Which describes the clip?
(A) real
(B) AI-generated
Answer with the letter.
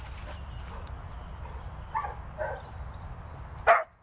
A